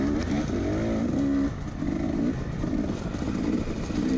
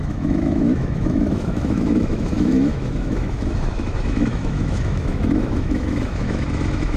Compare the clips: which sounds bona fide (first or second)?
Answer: first